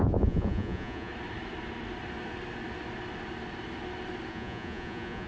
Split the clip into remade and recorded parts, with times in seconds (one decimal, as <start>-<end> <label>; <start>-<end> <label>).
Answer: 0.0-1.1 remade; 1.1-4.3 recorded; 4.3-5.3 remade